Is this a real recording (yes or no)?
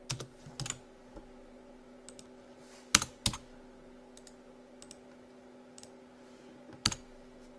yes